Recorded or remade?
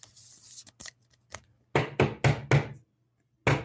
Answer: recorded